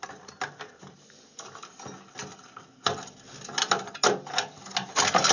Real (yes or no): yes